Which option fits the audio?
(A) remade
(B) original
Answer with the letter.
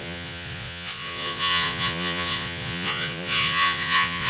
A